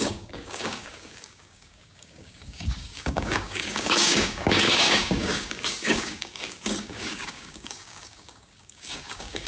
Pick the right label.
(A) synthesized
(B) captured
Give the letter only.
A